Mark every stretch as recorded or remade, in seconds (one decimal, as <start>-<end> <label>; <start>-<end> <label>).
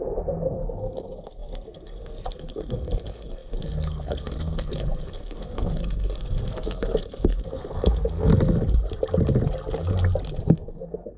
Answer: 0.0-8.3 remade; 8.3-10.4 recorded; 10.4-11.2 remade